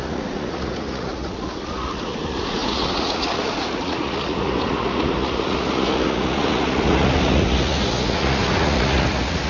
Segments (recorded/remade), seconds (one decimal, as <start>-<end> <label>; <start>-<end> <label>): 0.0-9.5 remade